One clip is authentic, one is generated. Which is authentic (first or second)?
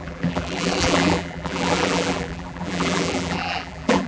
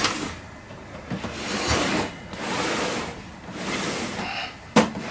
second